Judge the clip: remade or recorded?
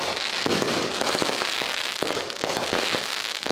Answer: remade